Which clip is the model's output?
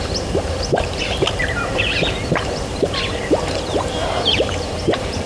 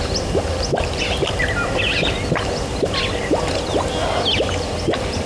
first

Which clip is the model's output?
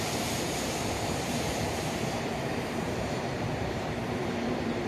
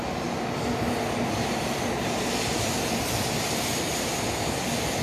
first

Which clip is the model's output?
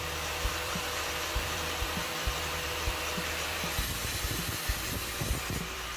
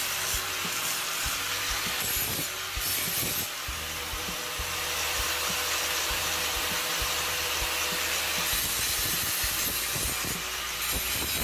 first